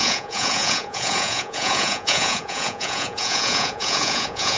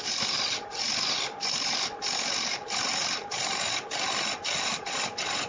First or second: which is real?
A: second